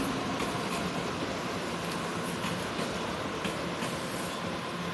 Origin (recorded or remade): recorded